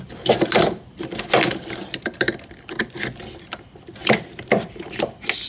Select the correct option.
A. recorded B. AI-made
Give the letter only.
A